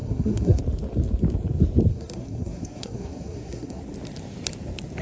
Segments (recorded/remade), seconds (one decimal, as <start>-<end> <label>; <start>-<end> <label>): 0.0-0.6 remade; 0.6-1.9 recorded; 1.9-3.8 remade; 3.8-5.0 recorded